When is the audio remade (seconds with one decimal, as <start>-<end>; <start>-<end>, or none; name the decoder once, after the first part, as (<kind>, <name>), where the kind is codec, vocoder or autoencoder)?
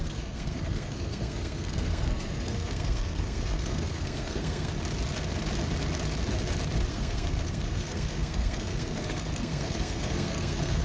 0.0-4.7 (codec, SNAC); 6.9-10.8